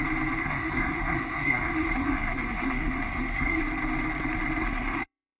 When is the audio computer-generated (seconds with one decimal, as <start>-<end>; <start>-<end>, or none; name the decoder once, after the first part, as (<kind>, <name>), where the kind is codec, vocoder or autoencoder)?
0.4-3.6 (codec, SNAC); 4.6-5.4